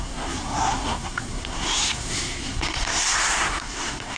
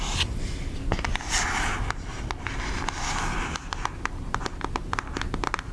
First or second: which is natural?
second